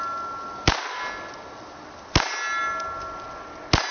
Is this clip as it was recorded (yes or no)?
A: yes